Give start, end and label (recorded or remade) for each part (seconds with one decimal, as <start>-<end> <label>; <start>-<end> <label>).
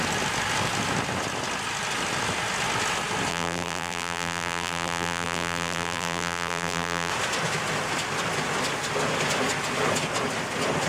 0.0-3.3 recorded; 3.3-7.1 remade; 7.1-10.9 recorded